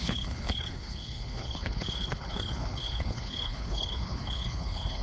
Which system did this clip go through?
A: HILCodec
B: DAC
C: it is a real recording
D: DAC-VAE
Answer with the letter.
A